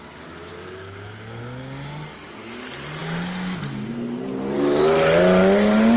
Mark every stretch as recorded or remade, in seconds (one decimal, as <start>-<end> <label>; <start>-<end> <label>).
0.0-6.0 recorded